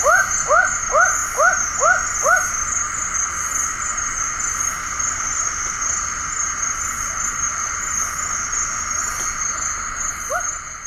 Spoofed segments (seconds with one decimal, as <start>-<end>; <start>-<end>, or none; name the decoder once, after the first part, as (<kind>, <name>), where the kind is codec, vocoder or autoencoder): none

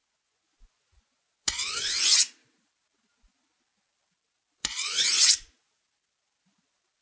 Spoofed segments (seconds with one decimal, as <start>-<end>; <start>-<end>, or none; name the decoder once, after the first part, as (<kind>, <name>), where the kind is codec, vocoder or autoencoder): 0.0-2.3 (vocoder, Vocos); 4.6-5.2

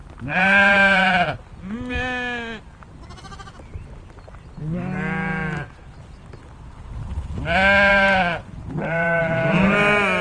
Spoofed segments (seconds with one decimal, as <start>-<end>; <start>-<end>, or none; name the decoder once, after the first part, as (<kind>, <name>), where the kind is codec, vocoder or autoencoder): 0.0-1.6 (vocoder, BigVGAN v2); 7.9-9.2